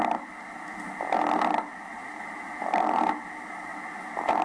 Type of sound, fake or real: real